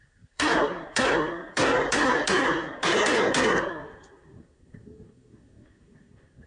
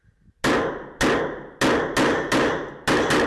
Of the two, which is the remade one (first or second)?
first